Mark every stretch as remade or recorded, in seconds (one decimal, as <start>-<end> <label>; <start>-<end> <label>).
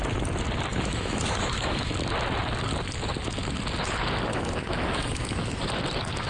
0.0-0.7 recorded; 0.7-1.9 remade; 1.9-4.3 recorded; 4.3-5.6 remade; 5.6-6.3 recorded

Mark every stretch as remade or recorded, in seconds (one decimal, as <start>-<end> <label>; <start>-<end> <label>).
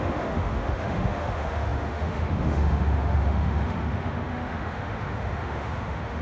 0.0-6.2 remade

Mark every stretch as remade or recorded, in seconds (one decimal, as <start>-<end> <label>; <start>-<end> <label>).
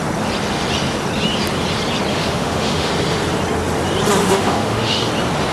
0.0-2.1 recorded; 2.1-2.9 remade; 2.9-4.2 recorded; 4.2-5.1 remade; 5.1-5.5 recorded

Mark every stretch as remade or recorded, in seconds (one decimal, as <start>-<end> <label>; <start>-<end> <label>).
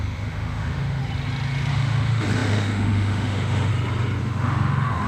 0.0-1.0 remade; 1.0-1.7 recorded; 1.7-3.7 remade; 3.7-4.2 recorded; 4.2-5.1 remade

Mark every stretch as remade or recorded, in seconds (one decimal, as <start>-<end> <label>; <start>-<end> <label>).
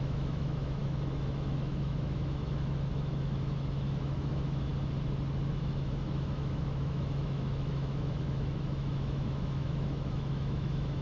0.0-4.7 remade; 4.7-5.5 recorded; 5.5-11.0 remade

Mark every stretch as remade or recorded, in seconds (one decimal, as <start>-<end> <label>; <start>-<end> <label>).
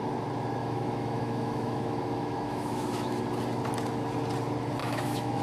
0.0-0.6 recorded; 0.6-3.2 remade; 3.2-4.8 recorded; 4.8-5.4 remade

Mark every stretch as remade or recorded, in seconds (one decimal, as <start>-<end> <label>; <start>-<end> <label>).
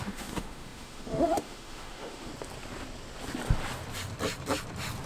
0.0-2.3 remade; 2.3-5.1 recorded